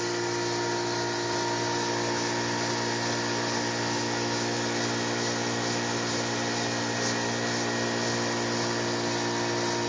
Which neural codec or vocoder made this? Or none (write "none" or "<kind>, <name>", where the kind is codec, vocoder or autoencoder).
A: none